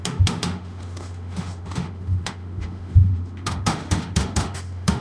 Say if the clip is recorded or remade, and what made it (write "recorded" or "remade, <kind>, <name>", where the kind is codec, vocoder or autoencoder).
remade, autoencoder, DAC-VAE